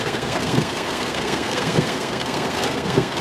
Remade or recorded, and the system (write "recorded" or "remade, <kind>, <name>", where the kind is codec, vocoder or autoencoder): remade, codec, SNAC